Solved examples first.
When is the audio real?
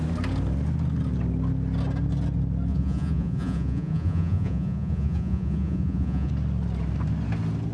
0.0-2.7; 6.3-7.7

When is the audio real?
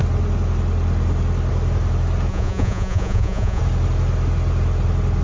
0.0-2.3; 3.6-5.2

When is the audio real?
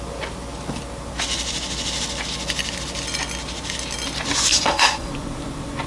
0.0-4.5; 5.1-5.9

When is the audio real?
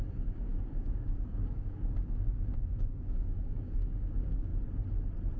4.5-5.4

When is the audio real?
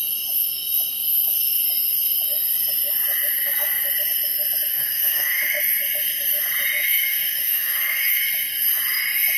0.0-4.7; 5.6-6.8; 8.3-9.4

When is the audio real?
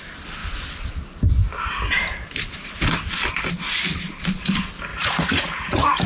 0.0-4.9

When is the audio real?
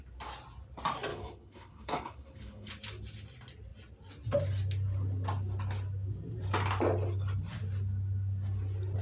0.0-1.1; 2.7-9.0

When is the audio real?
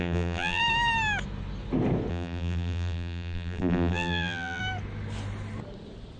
0.6-2.1; 4.6-6.2